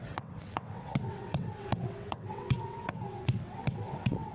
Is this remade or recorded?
remade